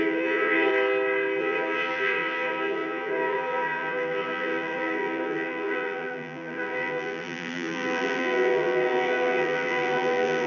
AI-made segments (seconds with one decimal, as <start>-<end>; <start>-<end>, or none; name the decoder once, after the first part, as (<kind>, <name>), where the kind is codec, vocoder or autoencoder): 0.0-0.7 (vocoder, BigVGAN v2); 1.4-10.5